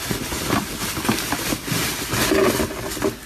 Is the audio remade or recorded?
recorded